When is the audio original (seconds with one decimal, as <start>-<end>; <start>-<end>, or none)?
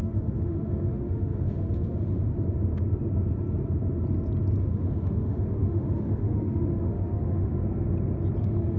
2.3-4.6; 7.6-8.4